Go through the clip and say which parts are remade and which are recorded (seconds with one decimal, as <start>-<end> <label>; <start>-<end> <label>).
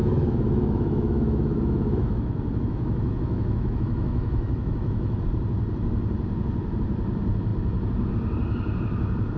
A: 0.0-5.2 remade; 5.2-9.4 recorded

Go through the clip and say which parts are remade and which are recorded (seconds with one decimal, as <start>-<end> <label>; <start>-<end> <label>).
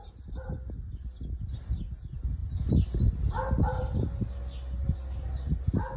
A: 0.0-6.0 recorded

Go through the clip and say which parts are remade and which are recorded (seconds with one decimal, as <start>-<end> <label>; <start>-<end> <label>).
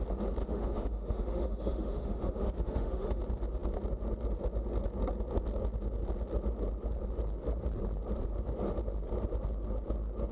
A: 0.0-0.4 recorded; 0.4-3.2 remade; 3.2-10.3 recorded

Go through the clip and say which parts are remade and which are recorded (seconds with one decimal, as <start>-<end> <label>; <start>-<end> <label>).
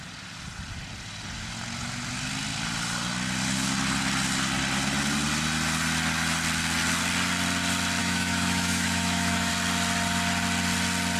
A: 0.0-8.0 recorded; 8.0-9.5 remade; 9.5-11.2 recorded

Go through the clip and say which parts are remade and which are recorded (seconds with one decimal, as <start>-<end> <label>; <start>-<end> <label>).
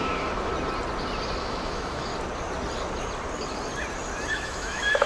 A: 0.0-0.5 remade; 0.5-1.4 recorded; 1.4-2.1 remade; 2.1-4.3 recorded; 4.3-5.1 remade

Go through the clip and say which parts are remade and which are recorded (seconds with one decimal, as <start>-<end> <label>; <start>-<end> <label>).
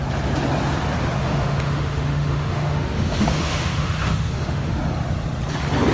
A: 0.0-1.2 recorded; 1.2-4.7 remade; 4.7-5.9 recorded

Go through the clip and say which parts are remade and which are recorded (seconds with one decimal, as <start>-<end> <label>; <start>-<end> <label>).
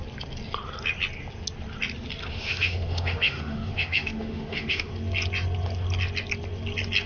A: 0.0-2.3 recorded; 2.3-4.9 remade; 4.9-7.1 recorded